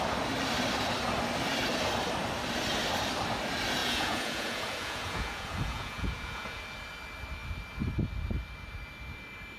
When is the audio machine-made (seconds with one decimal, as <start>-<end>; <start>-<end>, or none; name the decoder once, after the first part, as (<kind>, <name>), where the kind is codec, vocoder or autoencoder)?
3.8-6.6 (vocoder, Vocos)